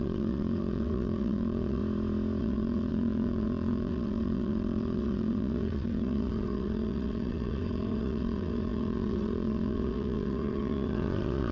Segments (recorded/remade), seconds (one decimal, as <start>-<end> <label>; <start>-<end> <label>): 0.0-1.8 remade; 1.8-2.4 recorded; 2.4-11.5 remade